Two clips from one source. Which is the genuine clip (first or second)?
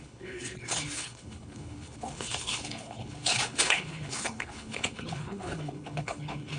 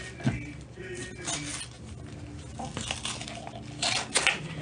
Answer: second